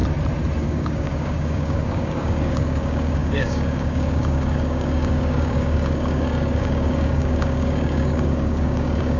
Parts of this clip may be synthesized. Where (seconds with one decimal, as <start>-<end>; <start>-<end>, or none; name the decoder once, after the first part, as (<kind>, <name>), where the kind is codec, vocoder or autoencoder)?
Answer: 0.6-9.2 (codec, DAC)

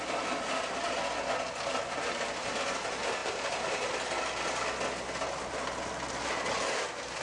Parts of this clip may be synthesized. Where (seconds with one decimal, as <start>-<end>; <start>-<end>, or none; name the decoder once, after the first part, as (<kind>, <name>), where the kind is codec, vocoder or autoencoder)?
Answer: none